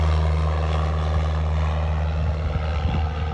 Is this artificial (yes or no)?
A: no